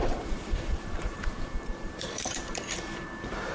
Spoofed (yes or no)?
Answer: yes